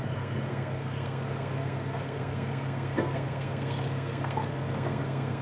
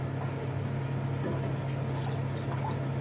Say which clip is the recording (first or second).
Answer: second